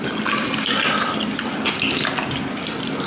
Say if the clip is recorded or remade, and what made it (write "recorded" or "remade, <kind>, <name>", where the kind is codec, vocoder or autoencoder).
recorded